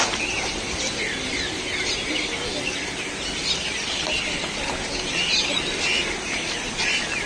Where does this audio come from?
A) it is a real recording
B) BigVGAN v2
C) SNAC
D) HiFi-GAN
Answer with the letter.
A